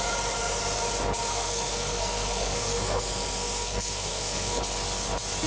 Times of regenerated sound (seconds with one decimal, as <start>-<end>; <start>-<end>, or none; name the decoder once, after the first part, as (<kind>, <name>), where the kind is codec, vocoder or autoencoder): 1.3-4.6 (codec, SNAC)